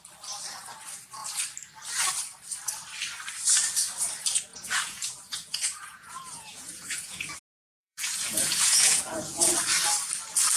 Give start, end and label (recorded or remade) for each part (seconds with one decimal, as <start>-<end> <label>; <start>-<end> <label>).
0.0-4.5 recorded; 4.5-7.3 remade; 7.3-7.8 recorded; 7.8-9.5 remade; 9.5-10.6 recorded